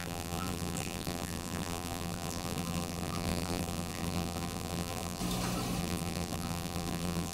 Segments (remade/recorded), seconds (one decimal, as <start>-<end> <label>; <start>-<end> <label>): 0.0-5.2 remade; 5.2-5.8 recorded; 5.8-7.3 remade